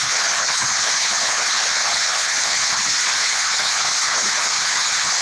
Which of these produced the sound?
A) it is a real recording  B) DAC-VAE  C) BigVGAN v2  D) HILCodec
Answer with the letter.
D